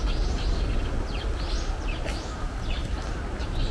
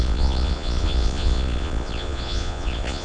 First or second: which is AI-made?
second